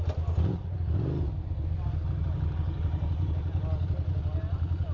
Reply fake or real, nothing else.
real